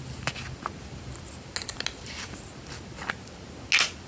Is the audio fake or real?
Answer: real